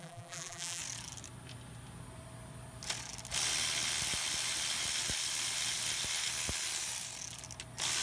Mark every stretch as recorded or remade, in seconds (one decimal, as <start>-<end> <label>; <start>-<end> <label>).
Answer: 0.0-0.8 remade; 0.8-8.0 recorded